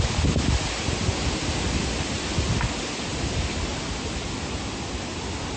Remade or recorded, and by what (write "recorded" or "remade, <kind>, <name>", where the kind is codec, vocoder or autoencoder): recorded